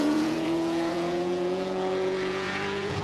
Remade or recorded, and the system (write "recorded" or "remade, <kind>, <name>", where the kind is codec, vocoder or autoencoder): remade, vocoder, Vocos